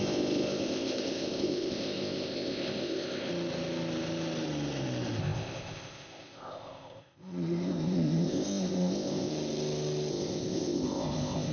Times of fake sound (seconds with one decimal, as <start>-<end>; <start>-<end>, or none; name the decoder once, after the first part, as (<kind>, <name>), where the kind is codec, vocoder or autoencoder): 0.0-3.3 (codec, ZipCodec); 5.2-9.3; 10.1-11.5